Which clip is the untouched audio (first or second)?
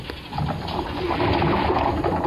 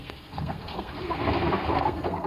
first